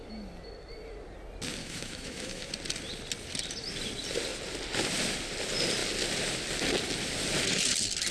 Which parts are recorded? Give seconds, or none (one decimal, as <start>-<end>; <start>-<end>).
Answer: 0.0-1.6; 2.5-8.1